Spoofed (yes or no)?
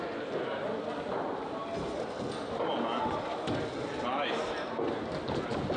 no